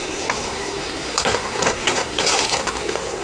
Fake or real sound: fake